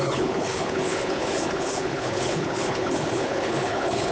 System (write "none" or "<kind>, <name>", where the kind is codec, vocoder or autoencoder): codec, HILCodec